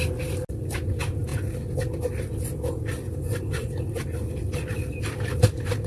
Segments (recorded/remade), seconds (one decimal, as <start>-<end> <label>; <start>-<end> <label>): 0.0-5.9 recorded